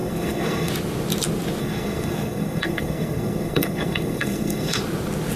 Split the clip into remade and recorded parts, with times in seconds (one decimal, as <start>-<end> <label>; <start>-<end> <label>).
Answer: 0.0-0.7 remade; 0.7-1.6 recorded; 1.6-4.8 remade; 4.8-5.4 recorded